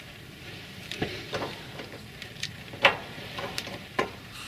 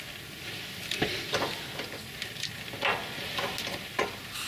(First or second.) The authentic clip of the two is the second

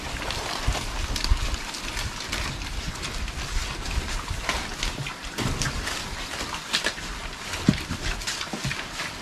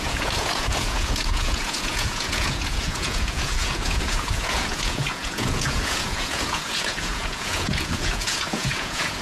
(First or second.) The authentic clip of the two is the first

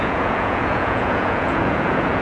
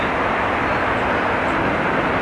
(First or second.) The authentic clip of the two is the second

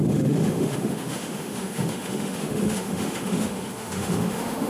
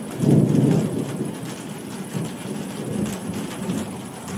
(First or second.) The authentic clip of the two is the second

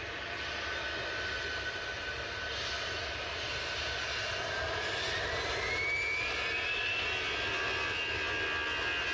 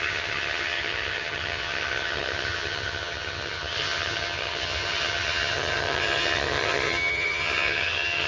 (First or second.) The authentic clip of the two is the first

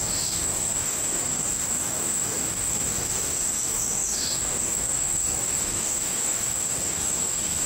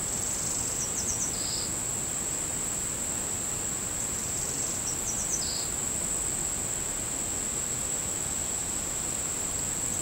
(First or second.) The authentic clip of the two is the second